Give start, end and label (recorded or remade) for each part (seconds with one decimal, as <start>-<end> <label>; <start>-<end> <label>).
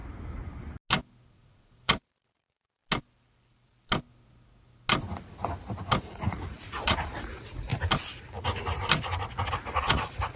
0.0-1.3 recorded; 1.3-2.8 remade; 2.8-6.0 recorded; 6.0-7.7 remade; 7.7-9.5 recorded; 9.5-10.4 remade